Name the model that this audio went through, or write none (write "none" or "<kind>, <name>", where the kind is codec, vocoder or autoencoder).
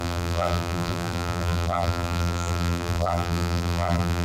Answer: vocoder, BigVGAN v2